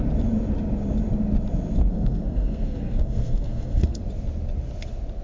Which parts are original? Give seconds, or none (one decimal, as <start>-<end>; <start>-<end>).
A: 0.0-1.9; 4.0-5.2